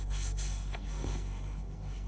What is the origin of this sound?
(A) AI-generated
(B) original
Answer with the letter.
A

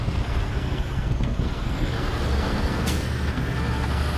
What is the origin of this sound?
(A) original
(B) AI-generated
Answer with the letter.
B